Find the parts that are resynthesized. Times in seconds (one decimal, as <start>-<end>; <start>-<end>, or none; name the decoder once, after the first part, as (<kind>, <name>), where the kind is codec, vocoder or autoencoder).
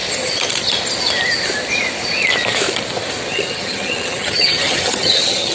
3.3-5.5 (vocoder, HiFi-GAN)